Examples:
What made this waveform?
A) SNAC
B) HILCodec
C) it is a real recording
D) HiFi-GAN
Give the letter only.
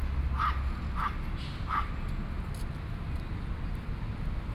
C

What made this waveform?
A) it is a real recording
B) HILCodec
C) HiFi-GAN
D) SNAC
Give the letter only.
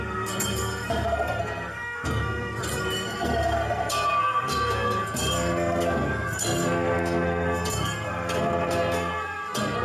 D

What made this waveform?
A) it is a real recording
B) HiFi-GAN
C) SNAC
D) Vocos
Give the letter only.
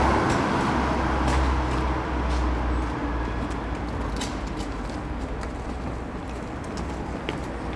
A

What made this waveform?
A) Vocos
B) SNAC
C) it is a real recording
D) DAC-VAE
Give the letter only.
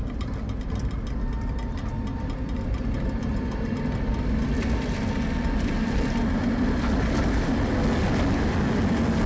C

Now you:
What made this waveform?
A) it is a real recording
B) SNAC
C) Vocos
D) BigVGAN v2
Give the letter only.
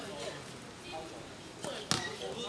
A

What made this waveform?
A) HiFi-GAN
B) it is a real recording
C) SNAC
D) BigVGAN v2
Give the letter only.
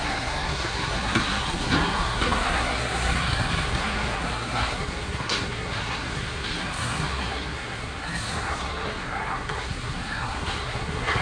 C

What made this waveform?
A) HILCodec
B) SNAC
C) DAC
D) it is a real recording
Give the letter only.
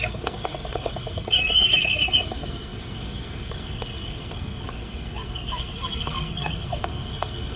B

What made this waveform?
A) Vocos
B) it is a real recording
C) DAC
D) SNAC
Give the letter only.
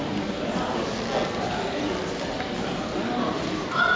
B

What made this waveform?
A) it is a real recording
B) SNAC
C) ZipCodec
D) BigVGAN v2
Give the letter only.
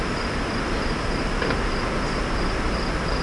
A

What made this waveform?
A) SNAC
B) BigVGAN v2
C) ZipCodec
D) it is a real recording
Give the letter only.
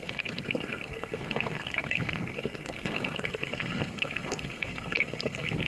A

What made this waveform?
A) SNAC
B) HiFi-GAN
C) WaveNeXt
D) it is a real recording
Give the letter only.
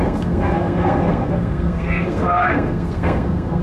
A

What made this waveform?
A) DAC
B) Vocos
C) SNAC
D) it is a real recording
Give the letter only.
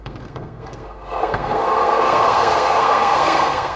C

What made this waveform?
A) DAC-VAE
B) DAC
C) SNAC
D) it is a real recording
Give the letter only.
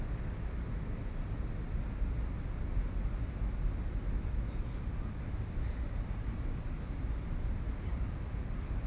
D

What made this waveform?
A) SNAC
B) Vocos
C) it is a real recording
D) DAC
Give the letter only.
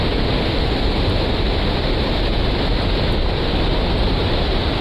C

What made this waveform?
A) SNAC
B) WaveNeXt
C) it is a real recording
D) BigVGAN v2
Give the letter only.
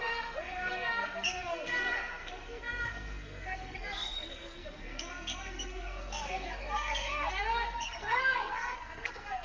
A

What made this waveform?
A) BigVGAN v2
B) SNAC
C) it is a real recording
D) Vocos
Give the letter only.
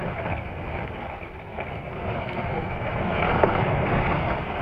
B